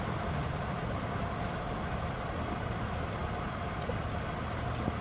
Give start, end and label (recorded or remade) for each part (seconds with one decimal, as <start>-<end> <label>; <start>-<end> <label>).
0.0-5.0 recorded

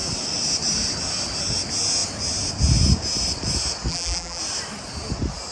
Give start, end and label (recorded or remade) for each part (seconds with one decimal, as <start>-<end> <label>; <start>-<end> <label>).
0.0-3.9 recorded; 3.9-4.4 remade; 4.4-5.5 recorded